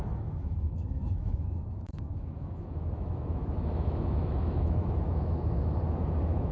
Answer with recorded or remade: remade